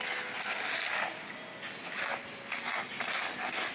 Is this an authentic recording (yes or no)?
yes